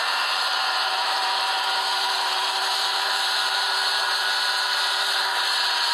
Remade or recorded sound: remade